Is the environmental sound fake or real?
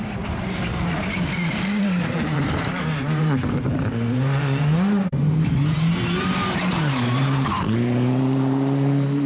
fake